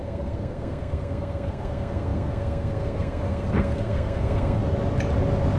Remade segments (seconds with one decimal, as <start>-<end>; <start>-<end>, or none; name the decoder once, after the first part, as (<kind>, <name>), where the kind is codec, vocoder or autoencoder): 0.0-4.6 (codec, SNAC)